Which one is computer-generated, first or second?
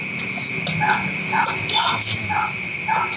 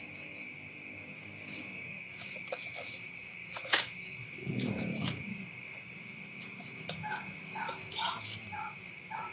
second